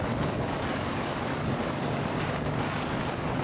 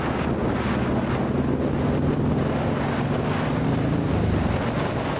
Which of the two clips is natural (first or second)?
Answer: second